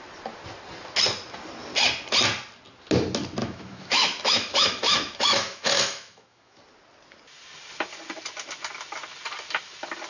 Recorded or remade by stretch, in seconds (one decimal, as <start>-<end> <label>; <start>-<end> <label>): 0.0-3.4 recorded; 3.4-6.6 remade; 6.6-10.1 recorded

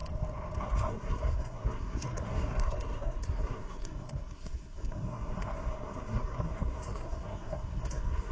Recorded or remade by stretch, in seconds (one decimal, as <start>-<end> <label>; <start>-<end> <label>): 0.0-0.6 recorded; 0.6-8.3 remade

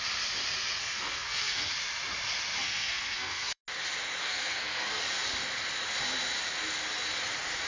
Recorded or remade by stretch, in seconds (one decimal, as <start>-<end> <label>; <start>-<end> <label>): 0.0-0.8 recorded; 0.8-1.7 remade; 1.7-2.6 recorded; 2.6-3.6 remade; 3.6-4.2 recorded; 4.2-5.0 remade; 5.0-7.7 recorded